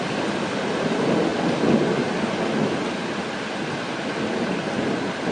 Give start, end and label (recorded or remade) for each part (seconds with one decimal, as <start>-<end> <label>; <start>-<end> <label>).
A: 0.0-5.3 recorded